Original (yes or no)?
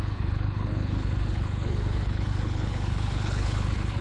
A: no